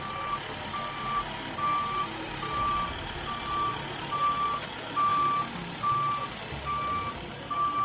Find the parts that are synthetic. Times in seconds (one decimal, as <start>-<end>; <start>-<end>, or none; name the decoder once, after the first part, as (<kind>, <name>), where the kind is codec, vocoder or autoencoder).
none

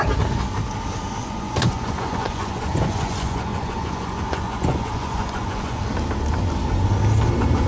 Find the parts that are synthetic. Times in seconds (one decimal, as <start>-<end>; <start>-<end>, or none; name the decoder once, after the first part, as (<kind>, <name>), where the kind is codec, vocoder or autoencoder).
1.2-5.8 (vocoder, Vocos)

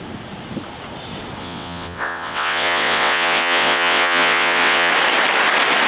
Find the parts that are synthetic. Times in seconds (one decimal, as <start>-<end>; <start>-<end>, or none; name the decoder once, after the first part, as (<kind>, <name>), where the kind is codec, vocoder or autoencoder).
1.4-4.9 (vocoder, WaveNeXt)

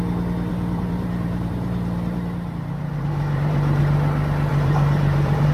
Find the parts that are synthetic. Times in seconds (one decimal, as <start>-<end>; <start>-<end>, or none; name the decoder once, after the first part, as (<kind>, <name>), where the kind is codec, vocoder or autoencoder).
0.5-3.8 (vocoder, BigVGAN v2); 4.5-5.5

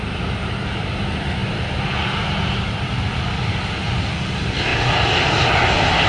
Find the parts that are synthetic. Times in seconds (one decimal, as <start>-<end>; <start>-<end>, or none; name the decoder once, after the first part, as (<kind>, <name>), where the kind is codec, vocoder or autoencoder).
none